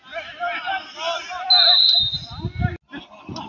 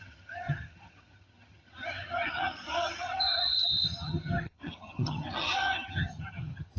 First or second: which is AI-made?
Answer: second